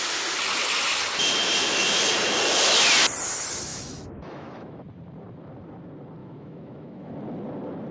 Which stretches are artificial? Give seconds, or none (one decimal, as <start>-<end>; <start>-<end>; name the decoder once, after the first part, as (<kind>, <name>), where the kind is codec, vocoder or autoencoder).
3.7-4.8 (autoencoder, DAC-VAE); 6.2-7.1